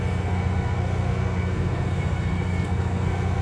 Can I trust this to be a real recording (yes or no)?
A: no